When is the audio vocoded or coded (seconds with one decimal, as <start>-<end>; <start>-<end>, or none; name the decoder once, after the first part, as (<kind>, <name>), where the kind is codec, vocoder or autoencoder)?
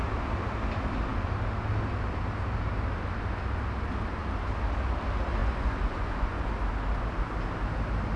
5.4-6.4 (vocoder, Vocos)